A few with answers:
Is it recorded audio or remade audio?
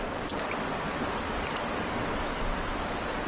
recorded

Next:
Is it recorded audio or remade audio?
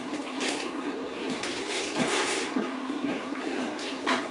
remade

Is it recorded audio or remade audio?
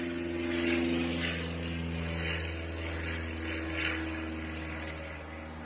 recorded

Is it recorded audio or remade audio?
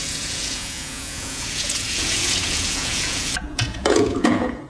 remade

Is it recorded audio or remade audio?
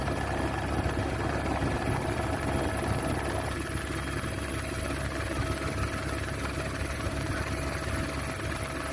recorded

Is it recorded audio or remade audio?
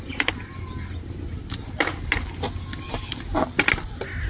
recorded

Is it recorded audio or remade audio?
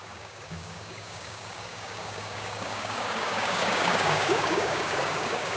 remade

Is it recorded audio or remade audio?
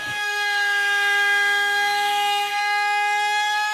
remade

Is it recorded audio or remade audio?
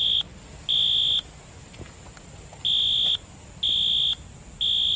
recorded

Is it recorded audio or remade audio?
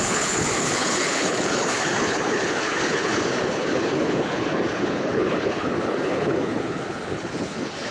remade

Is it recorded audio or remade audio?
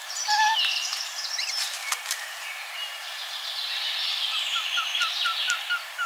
remade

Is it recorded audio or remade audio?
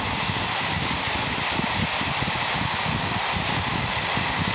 recorded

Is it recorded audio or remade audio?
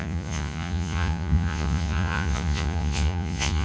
remade